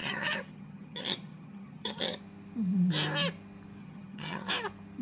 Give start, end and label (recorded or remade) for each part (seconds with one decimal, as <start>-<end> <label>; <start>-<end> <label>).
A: 0.0-2.2 remade; 2.2-3.8 recorded; 3.8-4.5 remade; 4.5-5.0 recorded